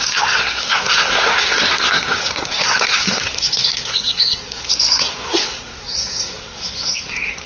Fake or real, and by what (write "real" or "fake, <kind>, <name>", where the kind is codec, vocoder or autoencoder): fake, codec, SNAC